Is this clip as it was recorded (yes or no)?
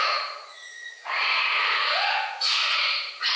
no